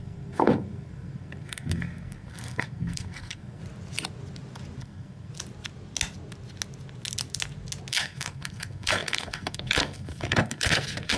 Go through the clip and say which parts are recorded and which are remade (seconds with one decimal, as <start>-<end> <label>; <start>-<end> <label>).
0.0-3.6 remade; 3.6-4.8 recorded; 4.8-5.3 remade; 5.3-7.9 recorded; 7.9-11.2 remade